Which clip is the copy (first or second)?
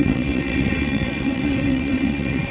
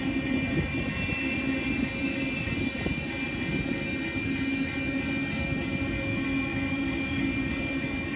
first